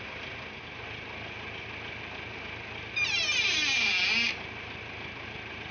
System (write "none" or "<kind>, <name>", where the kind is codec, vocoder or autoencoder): none